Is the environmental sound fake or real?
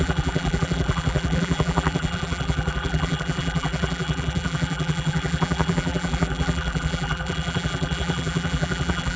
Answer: fake